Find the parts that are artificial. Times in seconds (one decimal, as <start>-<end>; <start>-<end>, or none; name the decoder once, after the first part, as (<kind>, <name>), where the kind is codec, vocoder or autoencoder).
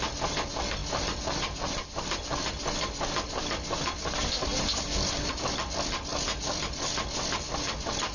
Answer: 0.0-8.1 (vocoder, BigVGAN v2)